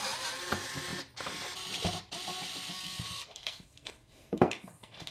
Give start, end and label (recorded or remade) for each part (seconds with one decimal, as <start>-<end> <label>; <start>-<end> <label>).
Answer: 0.0-2.7 recorded; 2.7-5.1 remade